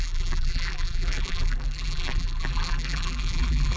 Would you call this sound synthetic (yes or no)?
yes